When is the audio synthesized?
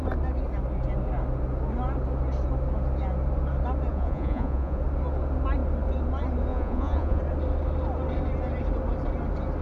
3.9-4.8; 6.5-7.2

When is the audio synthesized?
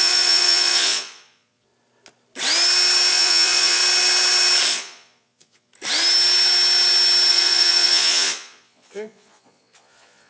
0.0-1.7; 3.1-3.8; 4.7-5.7; 7.3-10.3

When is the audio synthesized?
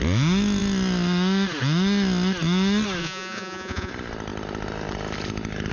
3.0-3.9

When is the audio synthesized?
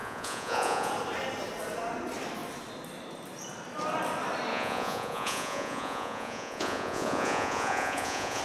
0.0-0.9; 4.5-8.4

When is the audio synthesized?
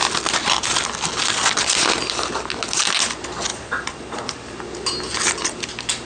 3.5-4.2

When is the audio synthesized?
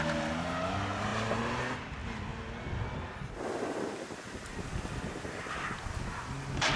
none